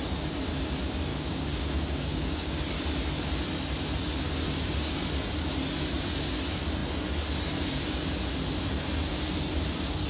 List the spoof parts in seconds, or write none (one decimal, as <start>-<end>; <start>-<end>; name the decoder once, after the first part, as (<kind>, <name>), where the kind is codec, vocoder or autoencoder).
1.1-2.6 (codec, DAC)